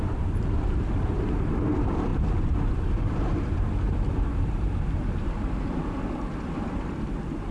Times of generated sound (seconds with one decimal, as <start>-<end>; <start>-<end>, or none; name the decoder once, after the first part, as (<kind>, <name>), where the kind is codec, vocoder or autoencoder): 0.0-7.5 (vocoder, BigVGAN v2)